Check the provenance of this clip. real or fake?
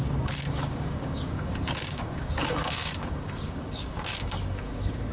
fake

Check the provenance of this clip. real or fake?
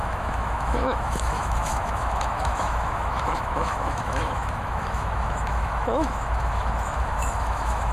fake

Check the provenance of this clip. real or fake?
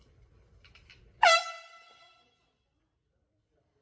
fake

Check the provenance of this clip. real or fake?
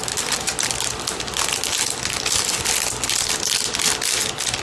real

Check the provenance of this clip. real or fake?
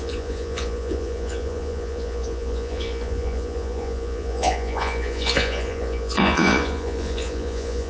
fake